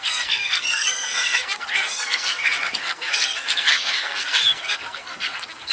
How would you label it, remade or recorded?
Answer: remade